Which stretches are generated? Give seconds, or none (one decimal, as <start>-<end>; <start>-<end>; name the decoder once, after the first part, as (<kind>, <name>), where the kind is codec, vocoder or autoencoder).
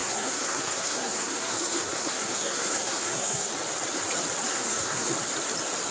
0.0-3.5 (codec, SNAC); 4.5-5.1